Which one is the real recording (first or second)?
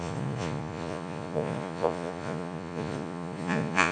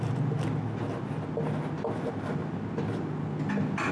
second